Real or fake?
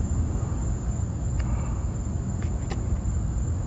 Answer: real